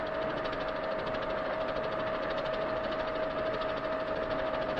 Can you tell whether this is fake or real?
real